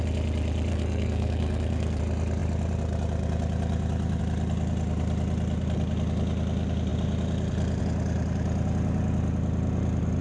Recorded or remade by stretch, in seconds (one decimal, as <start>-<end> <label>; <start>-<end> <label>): 0.0-0.7 recorded; 0.7-2.0 remade; 2.0-10.2 recorded